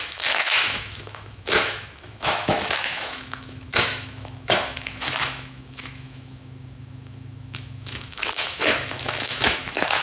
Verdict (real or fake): fake